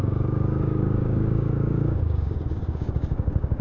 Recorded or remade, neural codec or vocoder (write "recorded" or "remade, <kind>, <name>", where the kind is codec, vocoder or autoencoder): remade, codec, DAC